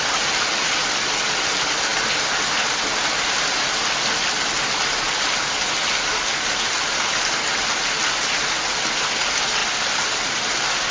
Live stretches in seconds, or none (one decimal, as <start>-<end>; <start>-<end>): 0.0-10.9